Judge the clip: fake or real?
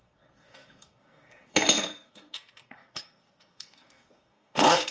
fake